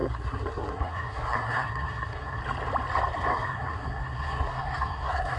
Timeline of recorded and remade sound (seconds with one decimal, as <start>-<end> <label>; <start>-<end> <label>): 0.0-2.4 remade; 2.4-3.3 recorded; 3.3-5.4 remade